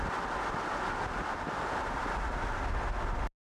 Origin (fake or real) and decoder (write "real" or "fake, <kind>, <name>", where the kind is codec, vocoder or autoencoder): real